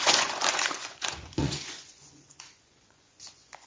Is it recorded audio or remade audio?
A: remade